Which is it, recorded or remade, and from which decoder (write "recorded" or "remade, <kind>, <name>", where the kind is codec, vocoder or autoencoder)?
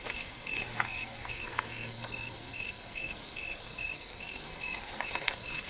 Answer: remade, codec, SNAC